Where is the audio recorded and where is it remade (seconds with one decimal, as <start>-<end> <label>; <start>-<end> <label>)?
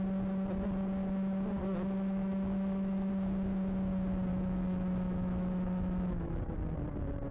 0.0-1.6 recorded; 1.6-3.1 remade; 3.1-4.3 recorded; 4.3-6.4 remade; 6.4-7.3 recorded